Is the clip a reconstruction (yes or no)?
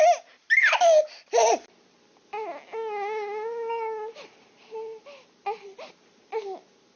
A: no